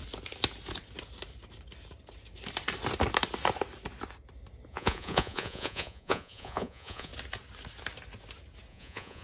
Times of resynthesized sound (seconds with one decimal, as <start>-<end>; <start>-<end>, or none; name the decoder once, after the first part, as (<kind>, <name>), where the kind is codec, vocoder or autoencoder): 4.7-7.1 (vocoder, Vocos); 8.7-9.2